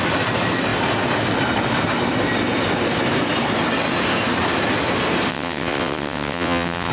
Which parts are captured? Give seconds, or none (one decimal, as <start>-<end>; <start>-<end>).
0.0-5.3